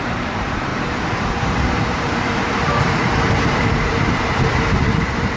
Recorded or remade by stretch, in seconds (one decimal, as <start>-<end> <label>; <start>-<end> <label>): 0.0-0.7 remade; 0.7-1.3 recorded; 1.3-5.4 remade